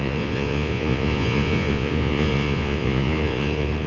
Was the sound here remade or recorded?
remade